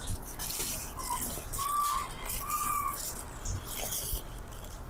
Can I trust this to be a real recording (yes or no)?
yes